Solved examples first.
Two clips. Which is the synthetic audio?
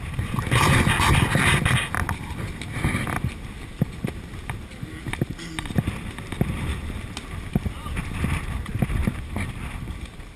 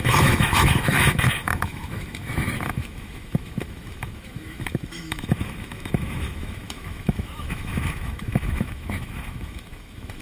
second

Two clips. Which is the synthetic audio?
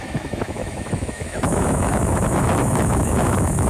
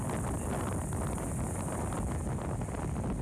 first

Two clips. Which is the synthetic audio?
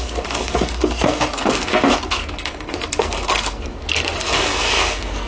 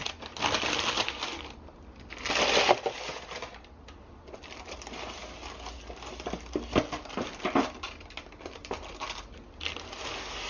first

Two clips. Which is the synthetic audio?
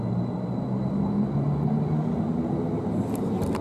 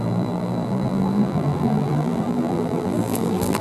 second